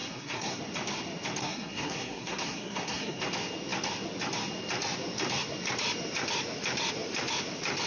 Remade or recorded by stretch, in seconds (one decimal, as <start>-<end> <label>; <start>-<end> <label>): 0.0-0.6 remade; 0.6-1.4 recorded; 1.4-3.2 remade; 3.2-7.9 recorded